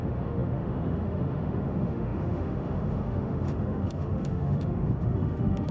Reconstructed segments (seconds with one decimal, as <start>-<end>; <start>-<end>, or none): 0.0-5.7